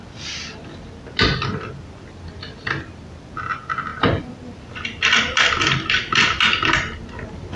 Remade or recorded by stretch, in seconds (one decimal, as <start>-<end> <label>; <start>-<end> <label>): 0.0-7.6 remade